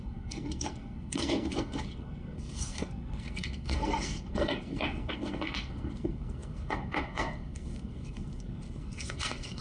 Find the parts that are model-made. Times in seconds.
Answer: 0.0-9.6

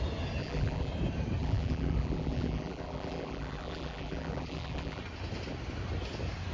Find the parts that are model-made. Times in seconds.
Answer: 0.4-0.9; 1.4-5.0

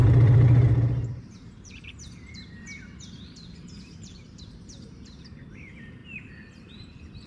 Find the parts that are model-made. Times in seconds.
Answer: 0.0-6.0; 6.7-7.3

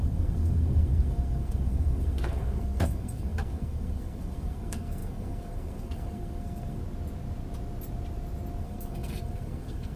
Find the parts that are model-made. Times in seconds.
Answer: 0.0-6.8; 8.6-10.0

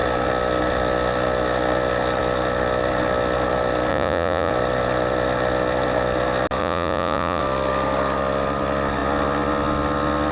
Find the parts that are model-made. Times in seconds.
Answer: 3.9-4.5; 6.6-7.4